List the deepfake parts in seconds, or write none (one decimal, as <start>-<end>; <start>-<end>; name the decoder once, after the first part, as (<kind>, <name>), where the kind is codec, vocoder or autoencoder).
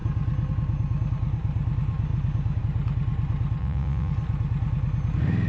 3.6-4.1 (vocoder, Vocos)